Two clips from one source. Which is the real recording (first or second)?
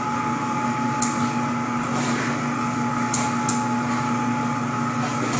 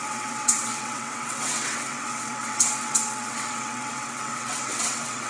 first